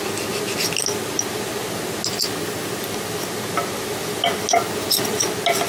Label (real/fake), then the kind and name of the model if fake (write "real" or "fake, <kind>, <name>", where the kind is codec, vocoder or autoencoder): real